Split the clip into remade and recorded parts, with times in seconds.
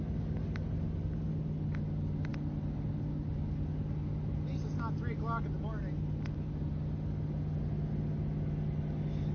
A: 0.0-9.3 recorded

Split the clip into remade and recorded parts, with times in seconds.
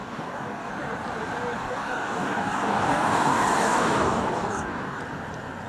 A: 0.0-0.7 remade; 0.7-1.6 recorded; 1.6-5.0 remade; 5.0-5.7 recorded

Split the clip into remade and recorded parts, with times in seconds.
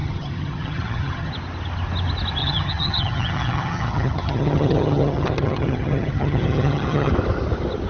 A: 0.0-1.3 remade; 1.3-2.4 recorded; 2.4-7.1 remade; 7.1-7.9 recorded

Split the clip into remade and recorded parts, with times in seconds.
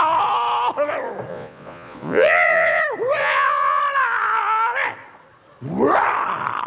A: 0.0-1.3 recorded; 1.3-2.8 remade; 2.8-3.2 recorded; 3.2-3.8 remade; 3.8-6.7 recorded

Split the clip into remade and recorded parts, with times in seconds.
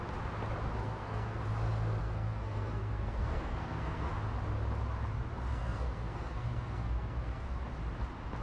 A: 0.0-0.8 recorded; 0.8-1.4 remade; 1.4-2.0 recorded; 2.0-4.1 remade; 4.1-5.5 recorded; 5.5-7.6 remade; 7.6-8.4 recorded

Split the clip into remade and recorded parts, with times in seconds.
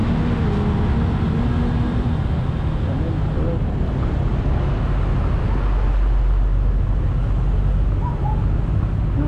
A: 0.0-9.3 recorded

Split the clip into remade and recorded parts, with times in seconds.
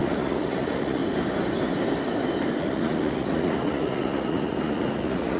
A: 0.0-1.0 remade; 1.0-2.6 recorded; 2.6-5.4 remade